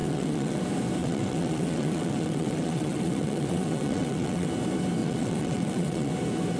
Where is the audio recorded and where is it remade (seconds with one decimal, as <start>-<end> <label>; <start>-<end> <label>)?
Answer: 0.0-0.6 remade; 0.6-1.0 recorded; 1.0-4.5 remade; 4.5-5.0 recorded; 5.0-6.1 remade; 6.1-6.6 recorded